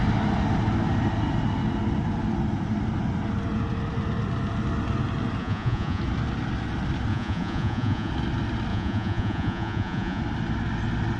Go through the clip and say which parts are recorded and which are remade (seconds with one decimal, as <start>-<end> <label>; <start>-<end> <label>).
0.0-5.4 recorded; 5.4-6.0 remade; 6.0-7.1 recorded; 7.1-8.1 remade; 8.1-8.7 recorded; 8.7-10.2 remade; 10.2-11.2 recorded